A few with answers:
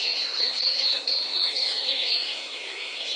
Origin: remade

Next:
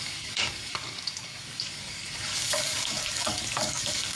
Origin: remade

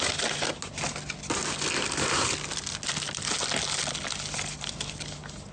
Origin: recorded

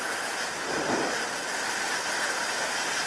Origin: recorded